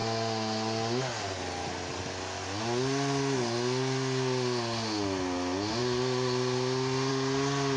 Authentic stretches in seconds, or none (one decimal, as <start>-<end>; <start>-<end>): 0.0-7.8